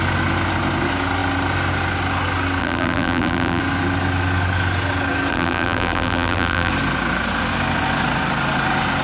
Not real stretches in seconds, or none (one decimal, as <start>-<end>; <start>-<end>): 2.6-3.6; 5.3-6.7